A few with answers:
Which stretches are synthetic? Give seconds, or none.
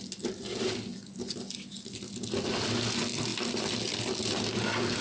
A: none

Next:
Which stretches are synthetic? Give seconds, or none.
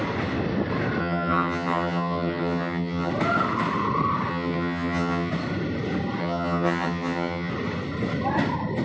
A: 1.0-3.1 (vocoder, HiFi-GAN); 4.3-5.3; 6.2-7.5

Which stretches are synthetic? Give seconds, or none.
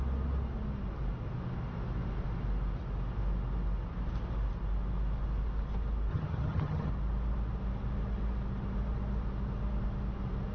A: 6.1-6.9 (vocoder, HiFi-GAN)